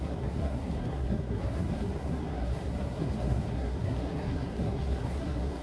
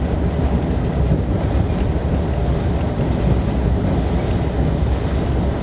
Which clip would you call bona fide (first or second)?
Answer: second